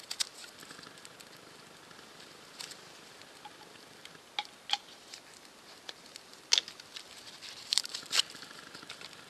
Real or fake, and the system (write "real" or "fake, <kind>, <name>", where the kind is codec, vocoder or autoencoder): real